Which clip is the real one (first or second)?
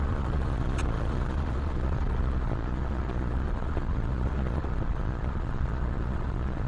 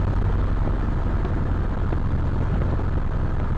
second